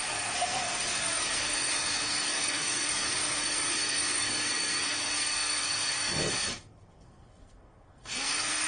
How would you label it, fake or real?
fake